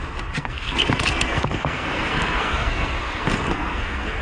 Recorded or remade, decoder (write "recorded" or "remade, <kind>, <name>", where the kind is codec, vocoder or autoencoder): remade, codec, SNAC